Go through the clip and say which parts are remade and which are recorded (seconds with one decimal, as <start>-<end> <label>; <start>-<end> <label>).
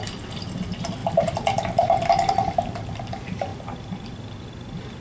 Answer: 0.0-5.0 remade